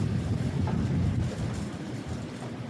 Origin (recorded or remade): remade